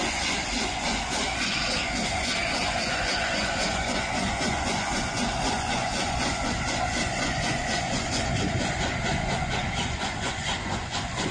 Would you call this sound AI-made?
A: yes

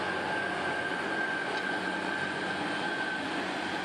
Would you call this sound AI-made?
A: yes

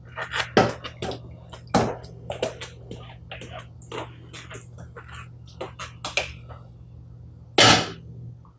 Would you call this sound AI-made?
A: no